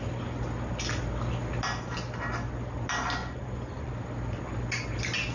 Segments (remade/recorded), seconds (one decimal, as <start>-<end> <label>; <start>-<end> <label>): 0.0-3.2 recorded; 3.2-3.9 remade; 3.9-5.3 recorded